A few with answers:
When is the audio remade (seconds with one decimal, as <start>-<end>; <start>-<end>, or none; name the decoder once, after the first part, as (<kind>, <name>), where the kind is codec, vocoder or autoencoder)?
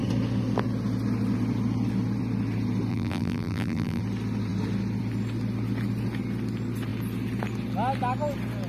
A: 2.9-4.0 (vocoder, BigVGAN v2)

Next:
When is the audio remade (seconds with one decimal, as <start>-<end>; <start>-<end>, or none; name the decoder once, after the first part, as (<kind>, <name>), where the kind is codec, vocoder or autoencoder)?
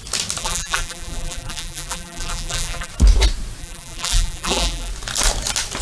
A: 0.4-2.9 (vocoder, BigVGAN v2); 3.6-4.9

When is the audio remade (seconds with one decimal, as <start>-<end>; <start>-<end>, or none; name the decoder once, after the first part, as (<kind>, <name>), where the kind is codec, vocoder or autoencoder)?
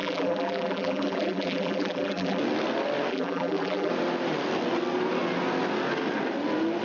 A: 0.0-2.4 (vocoder, BigVGAN v2); 3.1-3.9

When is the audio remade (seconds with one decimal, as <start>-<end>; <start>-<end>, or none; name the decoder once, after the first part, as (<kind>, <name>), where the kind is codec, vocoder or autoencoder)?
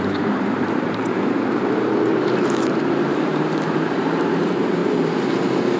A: 0.0-4.8 (vocoder, BigVGAN v2)